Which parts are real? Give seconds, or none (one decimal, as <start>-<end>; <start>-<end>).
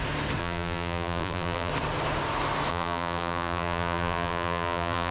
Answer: 0.0-0.4; 1.7-2.7